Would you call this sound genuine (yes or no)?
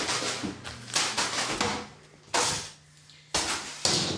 yes